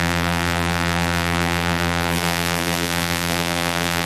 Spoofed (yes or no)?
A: yes